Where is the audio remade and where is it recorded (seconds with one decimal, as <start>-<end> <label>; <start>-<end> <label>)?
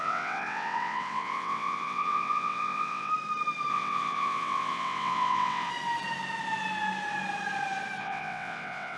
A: 0.0-3.1 remade; 3.1-3.7 recorded; 3.7-5.7 remade; 5.7-8.0 recorded; 8.0-9.0 remade